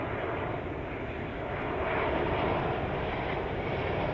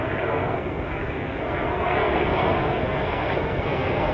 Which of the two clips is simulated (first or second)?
second